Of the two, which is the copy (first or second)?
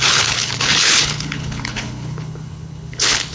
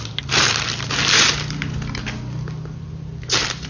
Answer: first